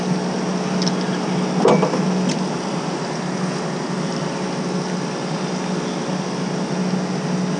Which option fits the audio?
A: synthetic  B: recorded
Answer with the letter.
B